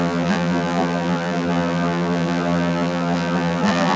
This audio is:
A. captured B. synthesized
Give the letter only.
B